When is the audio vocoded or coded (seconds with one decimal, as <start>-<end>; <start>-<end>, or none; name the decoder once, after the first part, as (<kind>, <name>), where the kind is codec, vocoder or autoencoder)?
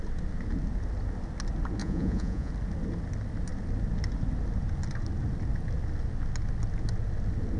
1.8-2.5 (vocoder, Vocos)